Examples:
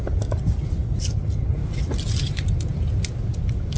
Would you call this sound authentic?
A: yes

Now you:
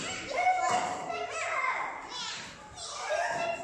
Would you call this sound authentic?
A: yes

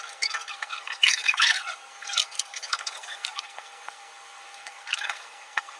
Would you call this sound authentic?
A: no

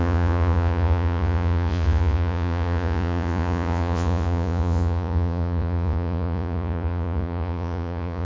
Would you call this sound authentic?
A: no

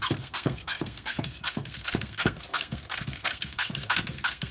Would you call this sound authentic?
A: no